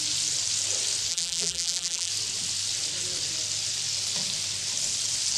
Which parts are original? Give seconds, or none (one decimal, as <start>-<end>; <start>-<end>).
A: 0.0-1.1; 2.1-5.4